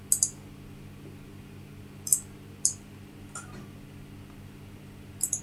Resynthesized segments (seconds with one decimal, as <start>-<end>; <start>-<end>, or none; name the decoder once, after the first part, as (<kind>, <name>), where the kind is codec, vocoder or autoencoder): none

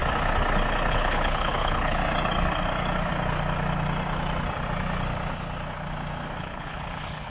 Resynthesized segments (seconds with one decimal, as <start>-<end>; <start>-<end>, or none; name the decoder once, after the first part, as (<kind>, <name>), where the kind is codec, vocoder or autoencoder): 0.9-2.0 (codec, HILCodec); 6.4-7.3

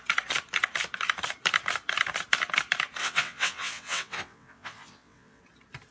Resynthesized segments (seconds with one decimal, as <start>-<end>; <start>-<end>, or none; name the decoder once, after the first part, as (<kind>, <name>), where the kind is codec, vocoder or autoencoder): 3.0-5.4 (vocoder, WaveNeXt)

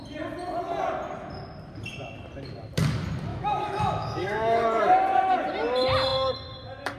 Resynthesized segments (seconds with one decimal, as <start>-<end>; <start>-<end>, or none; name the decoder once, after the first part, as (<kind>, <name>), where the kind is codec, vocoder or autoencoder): 3.3-4.8 (autoencoder, DAC-VAE)